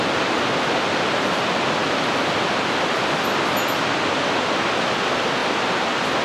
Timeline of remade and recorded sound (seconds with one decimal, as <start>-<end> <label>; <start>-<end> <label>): 0.0-6.2 recorded